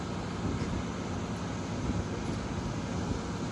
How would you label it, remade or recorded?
recorded